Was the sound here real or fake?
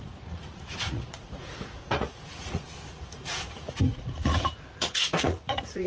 fake